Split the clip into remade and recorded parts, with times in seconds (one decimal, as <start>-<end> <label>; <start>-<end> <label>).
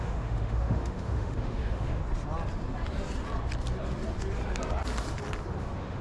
0.0-2.0 remade; 2.0-5.6 recorded; 5.6-6.0 remade